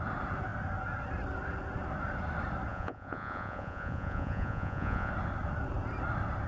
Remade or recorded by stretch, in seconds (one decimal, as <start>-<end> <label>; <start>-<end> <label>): 0.0-2.7 recorded; 2.7-5.1 remade; 5.1-6.5 recorded